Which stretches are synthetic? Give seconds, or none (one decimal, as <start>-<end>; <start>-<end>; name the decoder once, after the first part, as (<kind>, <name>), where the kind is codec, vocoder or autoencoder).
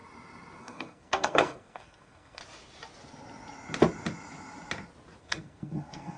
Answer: 0.6-2.4 (codec, SNAC); 5.2-6.2